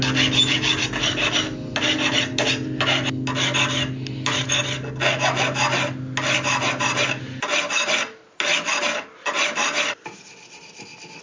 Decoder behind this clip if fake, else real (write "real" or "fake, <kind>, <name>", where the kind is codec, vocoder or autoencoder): real